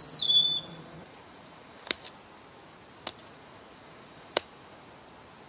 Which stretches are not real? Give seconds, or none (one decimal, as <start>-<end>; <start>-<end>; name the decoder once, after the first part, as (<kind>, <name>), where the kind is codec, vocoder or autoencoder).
0.7-1.8 (vocoder, Vocos); 3.2-4.9